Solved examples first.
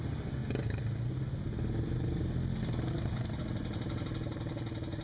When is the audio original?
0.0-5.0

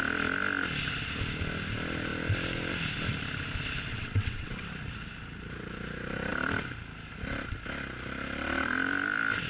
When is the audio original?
0.0-3.9; 4.7-9.5

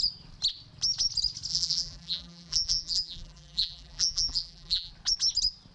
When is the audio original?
0.0-1.5; 4.9-5.7

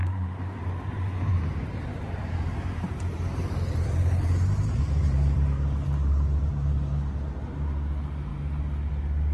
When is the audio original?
0.6-9.3